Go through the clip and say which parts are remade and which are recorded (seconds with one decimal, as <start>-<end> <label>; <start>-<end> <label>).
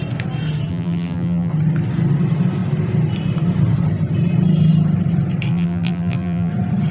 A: 0.0-0.7 recorded; 0.7-1.5 remade; 1.5-5.5 recorded; 5.5-6.5 remade; 6.5-6.9 recorded